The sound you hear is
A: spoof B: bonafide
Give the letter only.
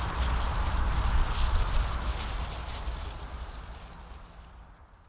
B